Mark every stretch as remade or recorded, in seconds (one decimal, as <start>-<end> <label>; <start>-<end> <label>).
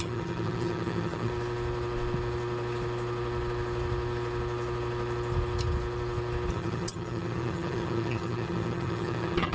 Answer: 0.0-1.3 remade; 1.3-6.5 recorded; 6.5-9.5 remade